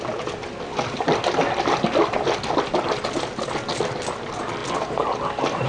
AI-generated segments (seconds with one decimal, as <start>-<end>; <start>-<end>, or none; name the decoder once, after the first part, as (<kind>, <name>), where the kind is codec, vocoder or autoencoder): none